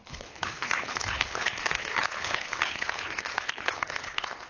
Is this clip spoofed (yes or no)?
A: yes